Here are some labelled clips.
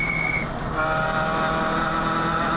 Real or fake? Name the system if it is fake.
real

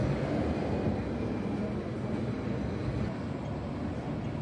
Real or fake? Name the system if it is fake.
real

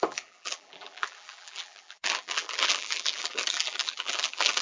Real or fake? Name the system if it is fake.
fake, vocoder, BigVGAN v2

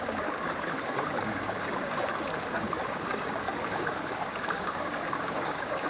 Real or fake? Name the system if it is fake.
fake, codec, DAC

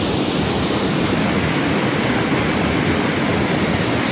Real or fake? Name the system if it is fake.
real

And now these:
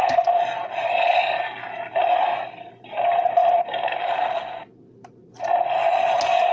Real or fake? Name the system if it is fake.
real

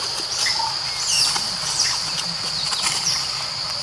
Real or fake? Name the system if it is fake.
real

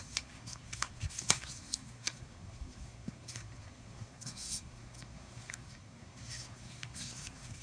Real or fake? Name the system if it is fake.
fake, codec, SNAC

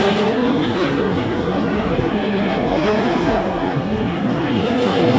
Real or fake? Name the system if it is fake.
fake, codec, SNAC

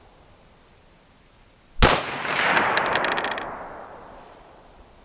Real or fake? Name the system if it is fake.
real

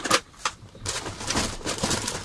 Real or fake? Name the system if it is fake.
fake, vocoder, BigVGAN v2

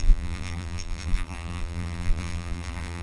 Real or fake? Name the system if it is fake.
fake, vocoder, BigVGAN v2